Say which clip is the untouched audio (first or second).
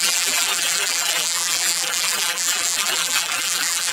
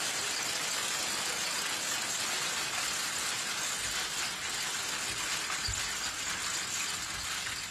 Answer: second